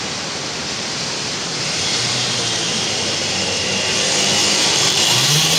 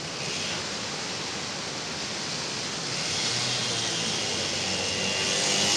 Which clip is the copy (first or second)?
first